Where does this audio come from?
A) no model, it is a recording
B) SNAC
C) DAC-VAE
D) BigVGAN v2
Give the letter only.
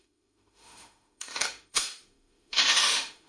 C